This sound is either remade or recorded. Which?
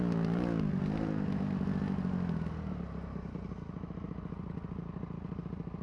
recorded